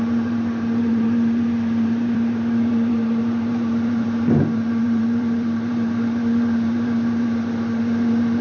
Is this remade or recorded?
remade